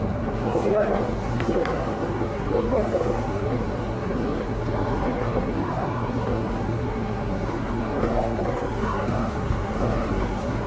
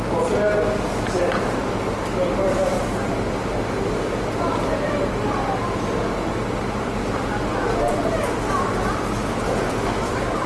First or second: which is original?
second